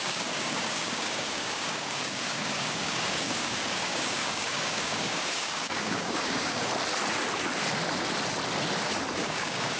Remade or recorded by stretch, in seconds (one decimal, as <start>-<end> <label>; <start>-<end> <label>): 0.0-6.7 remade; 6.7-9.2 recorded; 9.2-9.8 remade